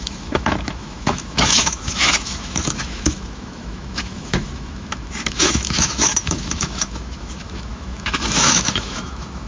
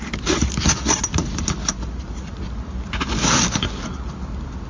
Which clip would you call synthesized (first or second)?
first